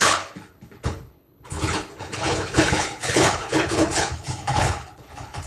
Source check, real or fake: fake